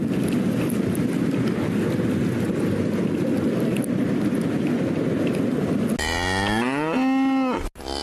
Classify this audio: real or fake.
real